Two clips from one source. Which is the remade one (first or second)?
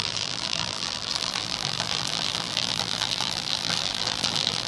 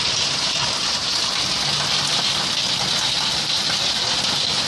first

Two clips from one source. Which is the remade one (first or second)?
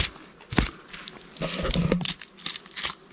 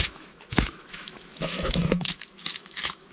second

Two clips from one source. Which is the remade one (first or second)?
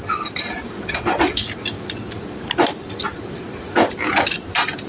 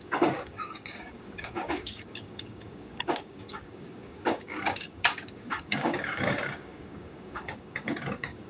second